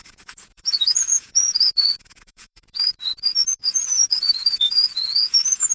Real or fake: fake